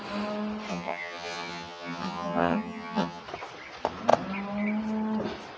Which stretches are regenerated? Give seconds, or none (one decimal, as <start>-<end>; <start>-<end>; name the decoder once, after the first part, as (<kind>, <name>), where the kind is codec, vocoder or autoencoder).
0.7-3.2 (vocoder, HiFi-GAN)